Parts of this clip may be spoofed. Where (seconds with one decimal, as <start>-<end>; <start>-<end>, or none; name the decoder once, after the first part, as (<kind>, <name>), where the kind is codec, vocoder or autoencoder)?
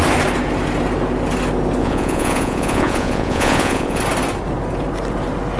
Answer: 1.8-4.0 (vocoder, Vocos)